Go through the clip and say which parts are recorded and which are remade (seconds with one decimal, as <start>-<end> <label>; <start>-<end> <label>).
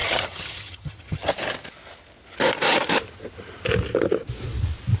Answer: 0.0-1.3 remade; 1.3-5.0 recorded